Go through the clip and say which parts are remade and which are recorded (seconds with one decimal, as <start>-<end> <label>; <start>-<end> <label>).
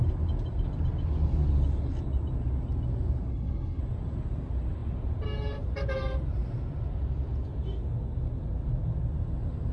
0.0-3.3 recorded; 3.3-3.8 remade; 3.8-9.7 recorded